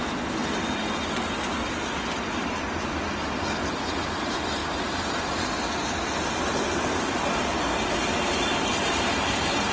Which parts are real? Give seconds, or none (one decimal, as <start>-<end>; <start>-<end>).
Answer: 0.0-9.7